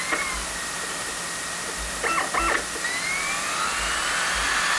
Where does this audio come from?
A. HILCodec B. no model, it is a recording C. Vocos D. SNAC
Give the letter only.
B